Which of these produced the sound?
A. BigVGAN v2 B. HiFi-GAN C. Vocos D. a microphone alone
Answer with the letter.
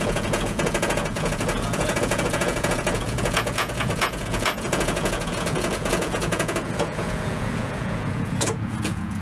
C